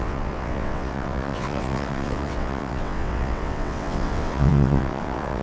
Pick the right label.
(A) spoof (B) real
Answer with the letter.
A